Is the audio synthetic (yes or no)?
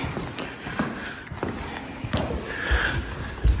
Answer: no